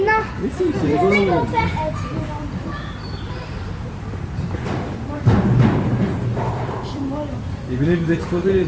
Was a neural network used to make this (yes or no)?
yes